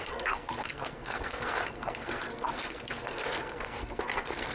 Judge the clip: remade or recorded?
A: remade